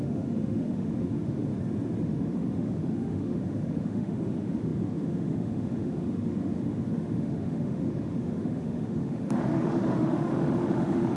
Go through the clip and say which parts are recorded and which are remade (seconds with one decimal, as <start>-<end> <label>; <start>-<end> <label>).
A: 0.0-1.5 remade; 1.5-2.0 recorded; 2.0-11.2 remade